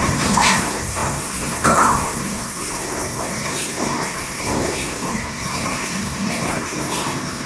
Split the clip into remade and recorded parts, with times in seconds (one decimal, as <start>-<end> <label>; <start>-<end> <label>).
0.0-7.5 remade